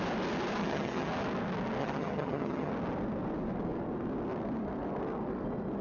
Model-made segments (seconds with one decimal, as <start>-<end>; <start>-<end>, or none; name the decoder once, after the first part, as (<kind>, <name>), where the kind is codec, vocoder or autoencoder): 0.6-1.1 (vocoder, HiFi-GAN); 1.8-2.7